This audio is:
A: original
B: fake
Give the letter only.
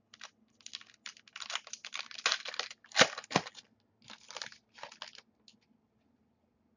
A